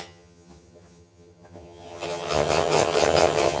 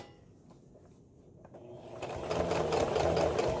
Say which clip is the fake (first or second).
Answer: first